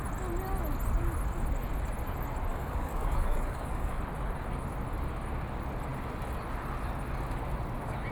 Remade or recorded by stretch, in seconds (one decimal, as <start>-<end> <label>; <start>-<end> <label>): 0.0-2.5 recorded; 2.5-4.0 remade; 4.0-8.1 recorded